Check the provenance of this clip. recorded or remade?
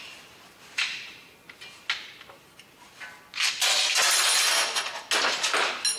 recorded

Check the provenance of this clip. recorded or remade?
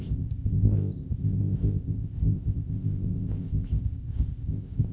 remade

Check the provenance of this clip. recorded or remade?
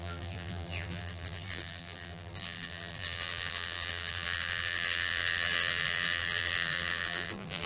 remade